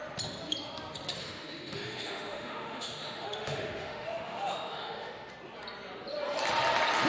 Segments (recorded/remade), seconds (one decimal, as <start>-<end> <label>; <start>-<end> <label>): 0.0-1.2 recorded; 1.2-5.3 remade; 5.3-7.1 recorded